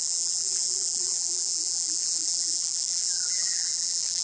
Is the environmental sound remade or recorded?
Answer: remade